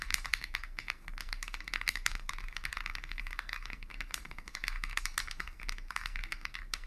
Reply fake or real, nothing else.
fake